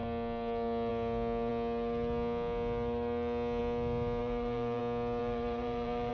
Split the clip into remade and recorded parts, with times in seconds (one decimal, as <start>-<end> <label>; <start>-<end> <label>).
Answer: 0.0-4.2 recorded; 4.2-4.8 remade; 4.8-5.2 recorded; 5.2-6.1 remade